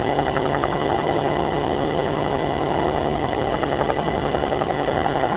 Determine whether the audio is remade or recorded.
remade